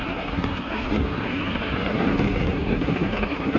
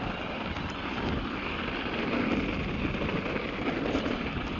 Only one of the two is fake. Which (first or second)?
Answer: first